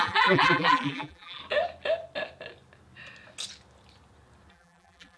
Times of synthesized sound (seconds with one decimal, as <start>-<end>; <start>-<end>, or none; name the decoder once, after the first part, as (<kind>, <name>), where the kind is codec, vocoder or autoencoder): 0.0-1.4 (vocoder, BigVGAN v2); 4.5-5.2